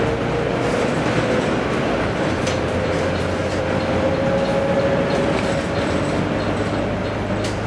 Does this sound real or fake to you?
real